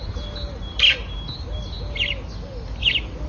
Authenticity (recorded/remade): recorded